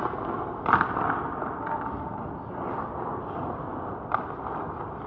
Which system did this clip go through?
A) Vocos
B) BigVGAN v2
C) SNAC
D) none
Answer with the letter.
D